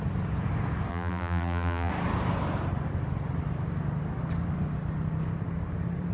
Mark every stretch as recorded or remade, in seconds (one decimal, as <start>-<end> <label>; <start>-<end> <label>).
0.0-0.9 recorded; 0.9-1.9 remade; 1.9-6.1 recorded

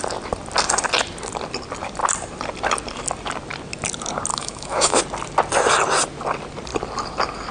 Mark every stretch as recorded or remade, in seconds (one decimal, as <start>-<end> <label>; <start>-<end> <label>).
0.0-4.3 recorded; 4.3-5.0 remade; 5.0-7.5 recorded